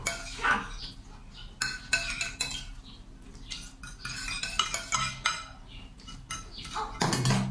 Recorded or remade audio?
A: recorded